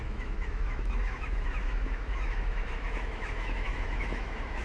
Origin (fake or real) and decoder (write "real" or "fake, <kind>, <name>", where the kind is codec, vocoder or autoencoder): fake, autoencoder, DAC-VAE